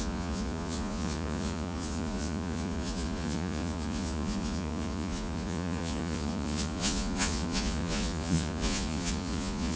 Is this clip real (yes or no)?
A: no